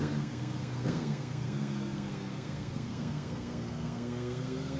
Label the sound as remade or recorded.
remade